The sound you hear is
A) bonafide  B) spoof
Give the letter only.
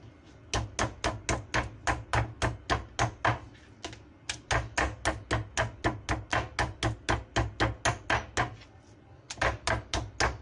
A